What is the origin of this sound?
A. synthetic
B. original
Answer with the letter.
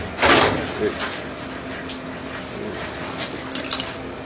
B